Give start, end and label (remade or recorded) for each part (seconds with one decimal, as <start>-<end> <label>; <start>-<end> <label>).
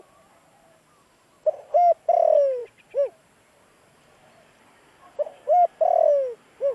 0.0-6.7 recorded